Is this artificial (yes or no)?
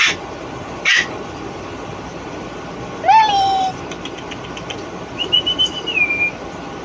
no